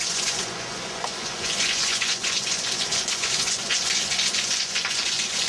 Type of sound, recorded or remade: remade